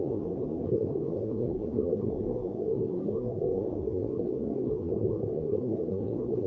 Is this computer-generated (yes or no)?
yes